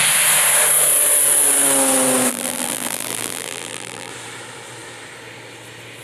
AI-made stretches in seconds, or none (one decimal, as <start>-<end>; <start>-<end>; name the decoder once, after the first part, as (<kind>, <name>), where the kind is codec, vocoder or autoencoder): 2.3-4.1 (vocoder, BigVGAN v2)